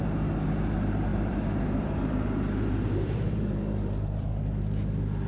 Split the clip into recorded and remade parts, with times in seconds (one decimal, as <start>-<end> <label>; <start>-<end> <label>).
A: 0.0-1.1 recorded; 1.1-4.3 remade; 4.3-5.3 recorded